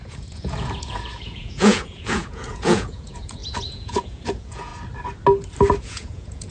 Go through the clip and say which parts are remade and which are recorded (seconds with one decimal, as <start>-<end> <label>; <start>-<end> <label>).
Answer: 0.0-4.7 remade; 4.7-5.8 recorded; 5.8-6.5 remade